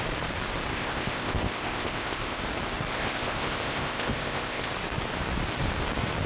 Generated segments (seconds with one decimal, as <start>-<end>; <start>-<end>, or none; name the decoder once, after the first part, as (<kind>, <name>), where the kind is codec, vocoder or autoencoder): 0.7-2.4 (codec, ZipCodec); 2.9-4.7